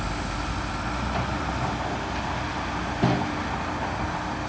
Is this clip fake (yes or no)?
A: no